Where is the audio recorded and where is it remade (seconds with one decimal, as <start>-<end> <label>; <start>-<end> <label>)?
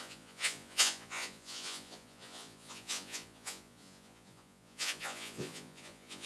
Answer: 0.0-6.3 remade